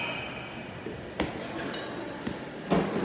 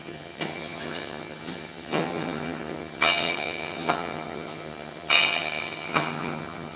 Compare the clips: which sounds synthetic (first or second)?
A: second